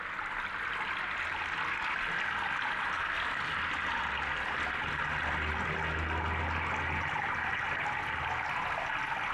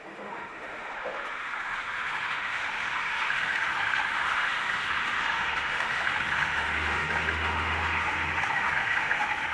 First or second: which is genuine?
first